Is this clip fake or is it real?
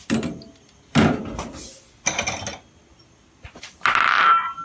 real